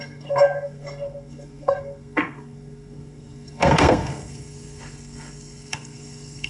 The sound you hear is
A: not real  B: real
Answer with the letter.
A